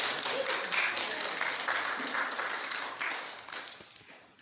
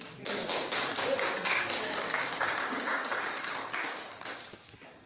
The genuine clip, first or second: first